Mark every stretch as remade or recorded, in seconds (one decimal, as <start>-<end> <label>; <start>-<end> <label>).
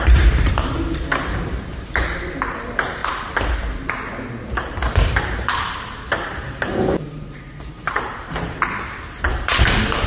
0.0-3.0 remade; 3.0-3.9 recorded; 3.9-10.1 remade